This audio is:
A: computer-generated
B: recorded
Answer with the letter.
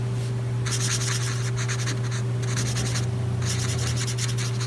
B